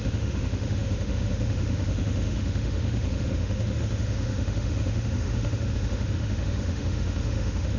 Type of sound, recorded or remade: remade